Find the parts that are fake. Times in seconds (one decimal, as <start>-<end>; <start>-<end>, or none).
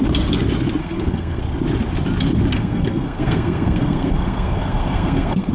0.8-1.4; 2.5-5.5